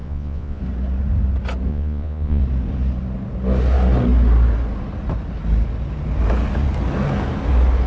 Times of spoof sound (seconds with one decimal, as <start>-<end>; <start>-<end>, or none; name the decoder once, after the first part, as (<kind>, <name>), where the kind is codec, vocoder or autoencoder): 0.0-0.6 (vocoder, Vocos); 1.7-2.4

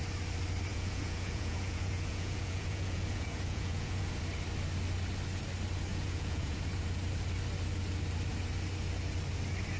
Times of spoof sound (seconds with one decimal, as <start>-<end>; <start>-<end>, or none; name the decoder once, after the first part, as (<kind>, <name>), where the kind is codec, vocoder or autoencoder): 0.7-4.1 (vocoder, Vocos); 5.9-6.6